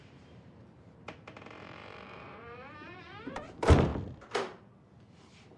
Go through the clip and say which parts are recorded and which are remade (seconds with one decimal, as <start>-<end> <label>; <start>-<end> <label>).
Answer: 0.0-3.9 remade; 3.9-5.0 recorded; 5.0-5.6 remade